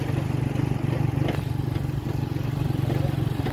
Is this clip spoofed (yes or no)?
no